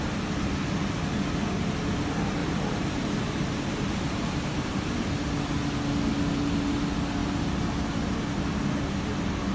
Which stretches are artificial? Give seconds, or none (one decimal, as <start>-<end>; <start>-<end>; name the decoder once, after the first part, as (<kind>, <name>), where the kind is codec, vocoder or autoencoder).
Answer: 2.4-4.9 (vocoder, BigVGAN v2)